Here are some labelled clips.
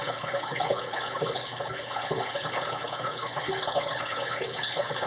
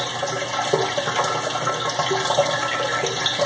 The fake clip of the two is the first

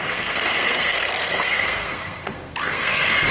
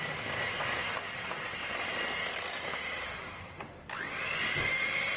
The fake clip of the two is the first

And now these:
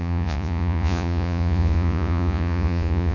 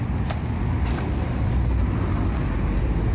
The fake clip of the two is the first